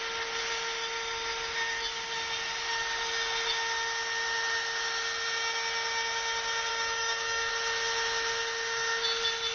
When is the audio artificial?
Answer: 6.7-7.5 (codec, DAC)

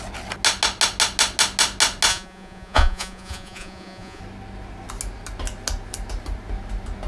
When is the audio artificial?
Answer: 2.1-4.2 (vocoder, Vocos)